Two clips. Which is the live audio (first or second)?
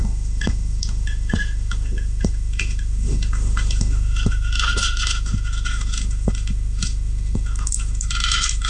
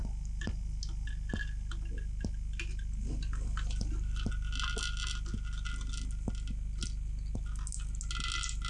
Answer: second